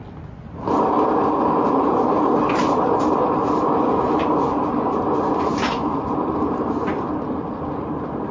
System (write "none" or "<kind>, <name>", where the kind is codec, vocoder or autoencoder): none